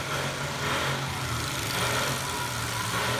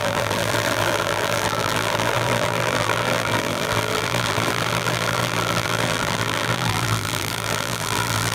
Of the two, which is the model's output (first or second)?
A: second